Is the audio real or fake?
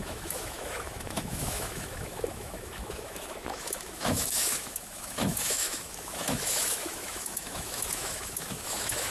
fake